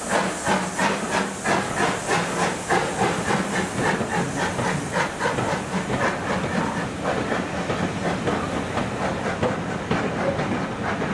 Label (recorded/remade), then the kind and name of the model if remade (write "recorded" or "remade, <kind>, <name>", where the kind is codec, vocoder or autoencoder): recorded